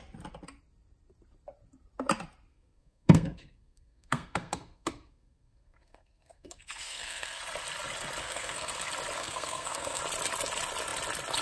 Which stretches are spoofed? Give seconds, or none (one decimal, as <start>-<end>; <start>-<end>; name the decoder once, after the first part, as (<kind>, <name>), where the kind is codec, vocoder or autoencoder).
2.5-7.4 (codec, SNAC); 8.2-8.7; 9.2-10.0